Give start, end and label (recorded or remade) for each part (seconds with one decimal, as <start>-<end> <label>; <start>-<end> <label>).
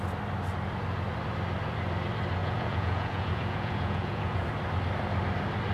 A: 0.0-2.4 recorded; 2.4-4.5 remade; 4.5-5.7 recorded